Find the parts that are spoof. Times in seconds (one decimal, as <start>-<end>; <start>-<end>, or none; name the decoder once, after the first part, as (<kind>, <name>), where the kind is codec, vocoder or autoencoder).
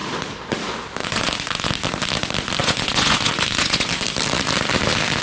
1.0-1.7 (vocoder, Vocos); 2.6-3.9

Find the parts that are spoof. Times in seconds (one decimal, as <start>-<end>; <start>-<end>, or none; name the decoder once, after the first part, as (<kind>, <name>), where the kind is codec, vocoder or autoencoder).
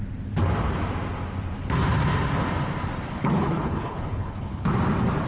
3.2-4.7 (codec, HILCodec)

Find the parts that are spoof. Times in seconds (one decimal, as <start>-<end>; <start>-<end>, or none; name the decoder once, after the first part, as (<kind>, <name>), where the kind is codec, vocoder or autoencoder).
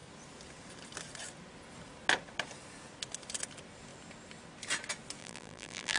5.2-6.0 (vocoder, BigVGAN v2)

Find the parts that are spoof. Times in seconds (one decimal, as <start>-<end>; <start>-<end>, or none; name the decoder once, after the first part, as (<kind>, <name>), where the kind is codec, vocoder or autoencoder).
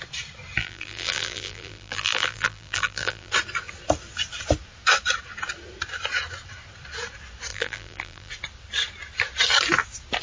0.6-3.3 (vocoder, BigVGAN v2); 7.5-8.3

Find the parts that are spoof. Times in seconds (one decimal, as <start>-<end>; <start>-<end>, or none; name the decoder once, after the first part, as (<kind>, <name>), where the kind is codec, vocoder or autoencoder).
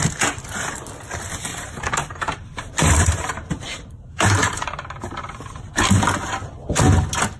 1.5-5.9 (vocoder, BigVGAN v2)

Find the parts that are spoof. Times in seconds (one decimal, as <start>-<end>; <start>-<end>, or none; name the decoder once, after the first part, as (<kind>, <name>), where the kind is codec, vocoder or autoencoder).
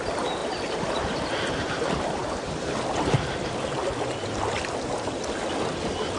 0.4-0.9 (vocoder, BigVGAN v2)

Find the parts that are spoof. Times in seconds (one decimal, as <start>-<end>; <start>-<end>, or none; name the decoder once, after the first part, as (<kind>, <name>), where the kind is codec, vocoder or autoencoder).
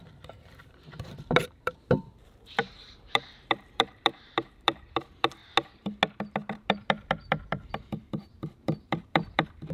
0.0-5.4 (vocoder, BigVGAN v2); 6.5-9.7